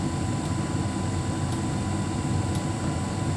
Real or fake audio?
real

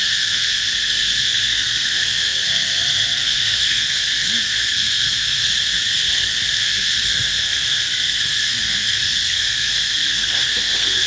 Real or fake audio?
fake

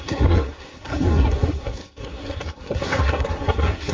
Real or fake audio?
fake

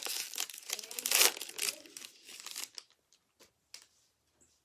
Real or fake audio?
real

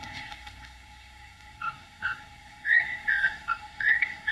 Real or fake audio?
fake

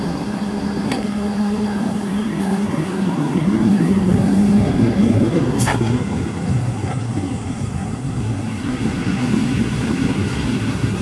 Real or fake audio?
fake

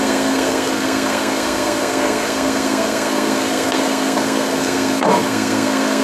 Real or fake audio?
fake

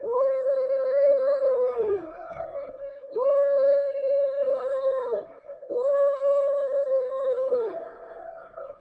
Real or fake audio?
fake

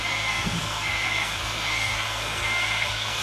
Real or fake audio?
fake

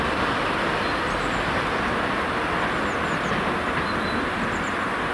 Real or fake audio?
real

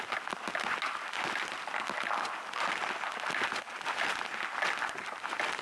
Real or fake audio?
real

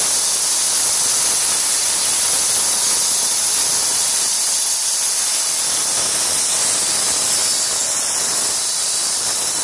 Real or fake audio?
real